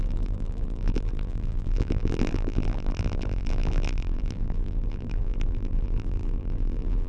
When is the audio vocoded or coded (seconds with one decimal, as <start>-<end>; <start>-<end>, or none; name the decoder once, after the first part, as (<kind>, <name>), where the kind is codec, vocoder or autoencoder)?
0.0-7.1 (vocoder, BigVGAN v2)